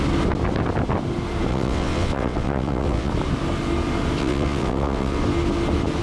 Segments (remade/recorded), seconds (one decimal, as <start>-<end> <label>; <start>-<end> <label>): 0.0-1.5 recorded; 1.5-3.1 remade; 3.1-4.2 recorded; 4.2-5.2 remade; 5.2-6.0 recorded